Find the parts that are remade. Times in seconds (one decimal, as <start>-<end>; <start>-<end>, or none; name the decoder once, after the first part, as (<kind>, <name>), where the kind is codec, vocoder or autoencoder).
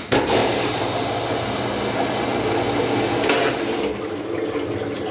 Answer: none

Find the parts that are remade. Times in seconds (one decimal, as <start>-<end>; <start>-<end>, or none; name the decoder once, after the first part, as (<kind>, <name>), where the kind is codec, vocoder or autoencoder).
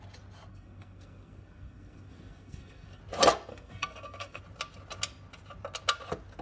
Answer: 0.5-3.0 (codec, SNAC); 3.5-4.4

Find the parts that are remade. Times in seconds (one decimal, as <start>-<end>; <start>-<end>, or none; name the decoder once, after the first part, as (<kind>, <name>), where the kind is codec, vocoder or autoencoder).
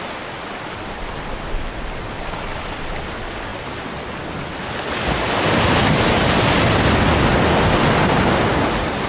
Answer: none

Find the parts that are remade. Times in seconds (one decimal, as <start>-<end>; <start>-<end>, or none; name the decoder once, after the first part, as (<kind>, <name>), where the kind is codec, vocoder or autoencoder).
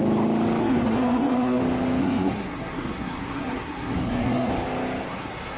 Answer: 0.6-1.6 (codec, SNAC); 2.0-4.5; 5.1-5.6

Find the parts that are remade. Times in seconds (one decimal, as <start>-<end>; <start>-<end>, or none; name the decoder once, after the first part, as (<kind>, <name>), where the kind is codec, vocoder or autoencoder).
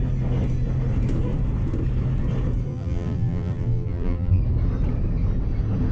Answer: 2.7-4.4 (vocoder, BigVGAN v2)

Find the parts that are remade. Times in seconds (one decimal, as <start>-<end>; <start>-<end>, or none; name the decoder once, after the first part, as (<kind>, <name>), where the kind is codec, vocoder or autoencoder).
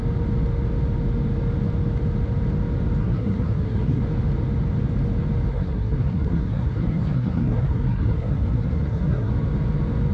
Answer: 3.0-4.0 (codec, SNAC); 5.5-9.3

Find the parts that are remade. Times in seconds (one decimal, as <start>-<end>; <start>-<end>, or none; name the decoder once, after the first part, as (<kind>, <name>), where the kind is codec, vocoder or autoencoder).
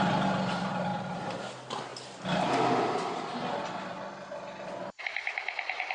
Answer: none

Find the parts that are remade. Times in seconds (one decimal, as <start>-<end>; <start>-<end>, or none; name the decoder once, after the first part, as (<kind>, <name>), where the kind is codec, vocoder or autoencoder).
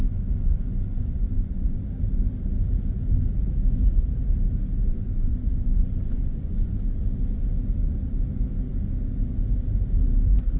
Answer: 0.0-1.8 (vocoder, Vocos); 4.9-6.7